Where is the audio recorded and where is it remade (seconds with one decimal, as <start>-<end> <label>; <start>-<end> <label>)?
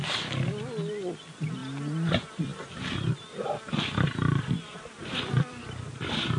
0.0-6.4 recorded